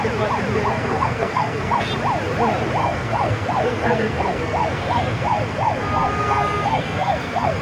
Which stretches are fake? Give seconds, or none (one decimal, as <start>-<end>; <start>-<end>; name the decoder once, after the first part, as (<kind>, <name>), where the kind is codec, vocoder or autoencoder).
0.7-1.9 (codec, SNAC); 2.8-7.6

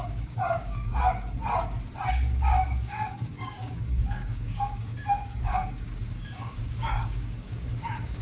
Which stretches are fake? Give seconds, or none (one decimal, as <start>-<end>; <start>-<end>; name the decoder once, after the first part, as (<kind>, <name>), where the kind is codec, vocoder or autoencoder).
0.0-1.4 (codec, DAC); 2.1-8.2

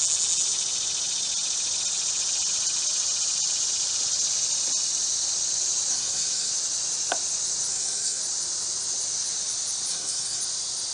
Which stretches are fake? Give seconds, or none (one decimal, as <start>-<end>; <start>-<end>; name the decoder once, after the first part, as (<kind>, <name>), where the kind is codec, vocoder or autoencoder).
5.9-6.5 (codec, SNAC); 7.7-8.2; 9.9-10.4

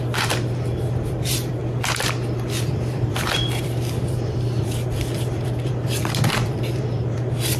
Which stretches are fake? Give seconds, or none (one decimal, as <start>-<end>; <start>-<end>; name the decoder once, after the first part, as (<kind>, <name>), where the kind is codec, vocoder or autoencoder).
0.0-1.6 (vocoder, BigVGAN v2); 2.9-7.6

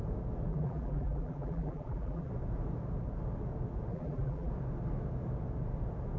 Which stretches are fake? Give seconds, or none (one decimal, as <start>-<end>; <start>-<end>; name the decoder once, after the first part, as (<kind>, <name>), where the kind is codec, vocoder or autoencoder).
0.5-2.3 (vocoder, BigVGAN v2); 3.9-4.5

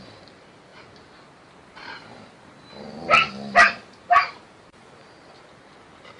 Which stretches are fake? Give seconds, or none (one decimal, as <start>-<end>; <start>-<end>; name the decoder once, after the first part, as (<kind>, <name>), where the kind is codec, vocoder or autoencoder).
none